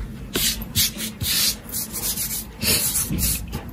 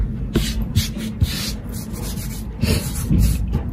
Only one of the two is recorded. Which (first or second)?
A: second